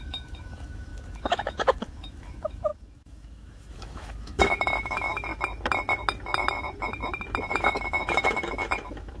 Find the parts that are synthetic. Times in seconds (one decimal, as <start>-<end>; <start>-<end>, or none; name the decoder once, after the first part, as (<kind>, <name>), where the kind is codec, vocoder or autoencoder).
0.0-5.3 (autoencoder, DAC-VAE); 7.5-9.2